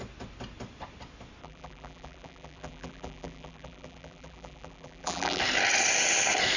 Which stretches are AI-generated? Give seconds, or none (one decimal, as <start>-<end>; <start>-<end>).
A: 1.4-5.4